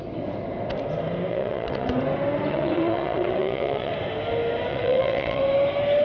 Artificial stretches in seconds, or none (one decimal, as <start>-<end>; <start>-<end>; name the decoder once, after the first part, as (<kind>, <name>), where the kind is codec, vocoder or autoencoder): 1.3-1.9 (vocoder, WaveNeXt); 2.5-3.9; 4.7-5.4